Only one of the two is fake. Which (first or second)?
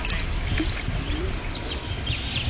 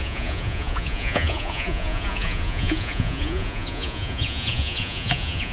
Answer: second